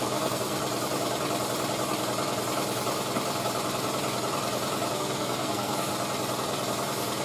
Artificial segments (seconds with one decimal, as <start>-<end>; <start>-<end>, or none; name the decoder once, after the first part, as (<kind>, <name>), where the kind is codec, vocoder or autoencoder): 0.0-0.6 (codec, SNAC); 4.9-5.9